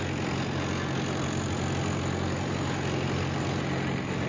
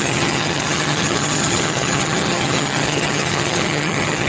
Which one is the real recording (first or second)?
first